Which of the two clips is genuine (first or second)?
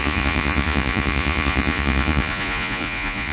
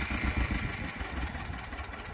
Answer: second